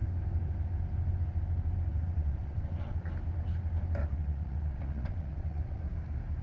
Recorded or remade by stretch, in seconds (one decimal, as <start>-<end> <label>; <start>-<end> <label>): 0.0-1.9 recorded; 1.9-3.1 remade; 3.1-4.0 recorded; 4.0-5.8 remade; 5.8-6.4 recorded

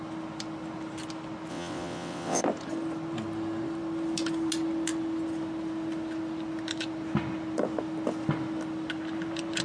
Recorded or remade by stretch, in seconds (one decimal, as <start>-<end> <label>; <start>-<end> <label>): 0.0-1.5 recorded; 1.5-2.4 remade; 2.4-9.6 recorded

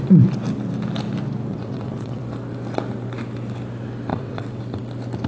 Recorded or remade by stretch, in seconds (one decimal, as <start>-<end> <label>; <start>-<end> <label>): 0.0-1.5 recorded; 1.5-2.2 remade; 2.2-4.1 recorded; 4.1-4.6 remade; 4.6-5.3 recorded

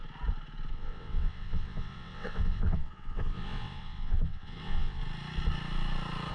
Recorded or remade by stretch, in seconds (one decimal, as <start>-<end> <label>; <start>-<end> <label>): 0.0-0.7 recorded; 0.7-5.0 remade; 5.0-6.3 recorded